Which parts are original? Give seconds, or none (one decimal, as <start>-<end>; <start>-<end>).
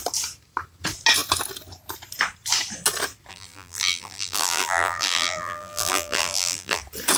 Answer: 0.0-3.3; 6.8-7.2